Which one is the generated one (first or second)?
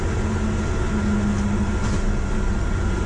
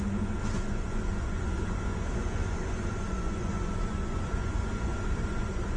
second